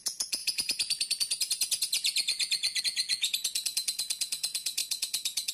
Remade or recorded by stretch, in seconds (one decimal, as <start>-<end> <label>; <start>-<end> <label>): 0.0-5.5 remade